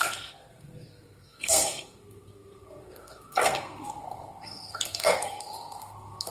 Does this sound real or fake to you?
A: fake